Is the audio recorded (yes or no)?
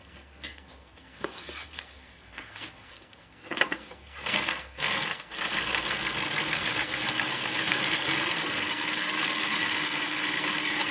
no